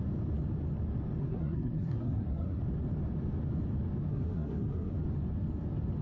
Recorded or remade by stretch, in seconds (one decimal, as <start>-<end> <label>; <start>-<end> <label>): 0.0-1.2 recorded; 1.2-2.6 remade; 2.6-4.1 recorded; 4.1-4.9 remade; 4.9-6.0 recorded